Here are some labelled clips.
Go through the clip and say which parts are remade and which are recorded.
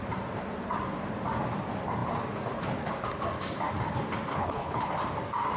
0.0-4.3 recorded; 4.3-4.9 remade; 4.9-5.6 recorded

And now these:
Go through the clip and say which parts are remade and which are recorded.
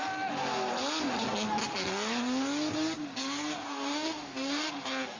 0.0-3.5 recorded; 3.5-4.7 remade; 4.7-5.2 recorded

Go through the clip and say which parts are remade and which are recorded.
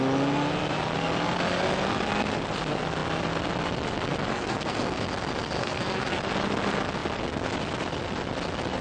0.0-4.3 recorded; 4.3-5.0 remade; 5.0-5.6 recorded; 5.6-6.2 remade; 6.2-8.8 recorded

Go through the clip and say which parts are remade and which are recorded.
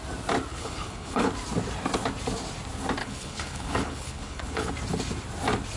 0.0-0.5 recorded; 0.5-1.3 remade; 1.3-3.0 recorded; 3.0-4.7 remade; 4.7-5.8 recorded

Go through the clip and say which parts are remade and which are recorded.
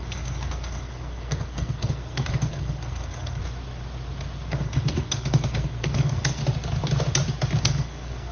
0.0-3.4 remade; 3.4-4.5 recorded; 4.5-6.4 remade; 6.4-7.6 recorded; 7.6-8.3 remade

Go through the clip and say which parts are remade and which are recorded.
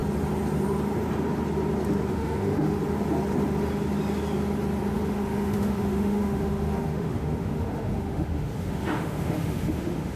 0.0-2.1 recorded; 2.1-2.8 remade; 2.8-4.9 recorded; 4.9-10.2 remade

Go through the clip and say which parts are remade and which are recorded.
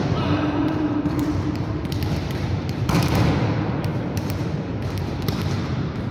0.0-0.6 recorded; 0.6-1.8 remade; 1.8-2.2 recorded; 2.2-2.9 remade; 2.9-3.9 recorded; 3.9-5.2 remade; 5.2-6.1 recorded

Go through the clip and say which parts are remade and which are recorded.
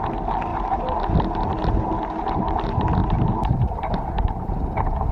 0.0-0.5 recorded; 0.5-2.5 remade; 2.5-3.0 recorded; 3.0-4.5 remade; 4.5-5.1 recorded